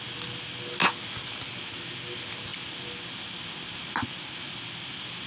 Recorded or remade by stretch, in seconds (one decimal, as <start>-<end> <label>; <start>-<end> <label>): 0.0-5.3 recorded